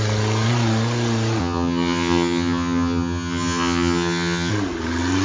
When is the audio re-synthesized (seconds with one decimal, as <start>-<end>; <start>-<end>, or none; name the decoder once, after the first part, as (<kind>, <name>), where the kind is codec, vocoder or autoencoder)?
1.4-4.5 (vocoder, HiFi-GAN)